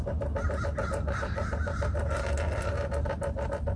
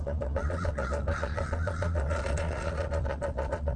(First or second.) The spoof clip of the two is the second